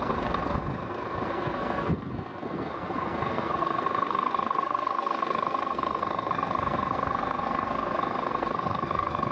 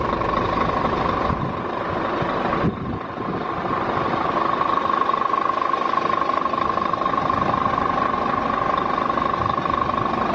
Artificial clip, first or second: first